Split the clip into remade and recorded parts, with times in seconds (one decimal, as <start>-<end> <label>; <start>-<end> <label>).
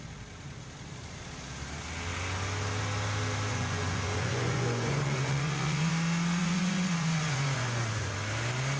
0.0-3.5 recorded; 3.5-5.9 remade; 5.9-6.4 recorded; 6.4-8.1 remade; 8.1-8.8 recorded